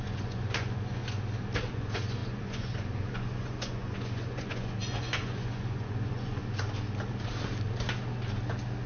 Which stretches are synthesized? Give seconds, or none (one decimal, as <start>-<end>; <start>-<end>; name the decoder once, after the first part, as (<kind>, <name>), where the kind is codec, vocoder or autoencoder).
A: 0.0-1.0 (vocoder, Vocos); 1.7-6.4